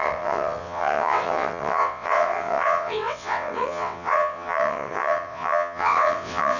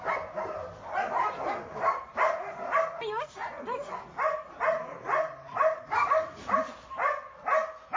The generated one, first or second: first